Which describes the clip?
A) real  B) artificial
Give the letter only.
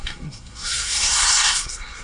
B